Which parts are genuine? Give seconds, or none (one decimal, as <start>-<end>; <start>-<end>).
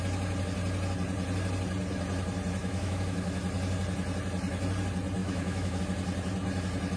0.0-2.6; 3.4-5.2; 5.8-7.0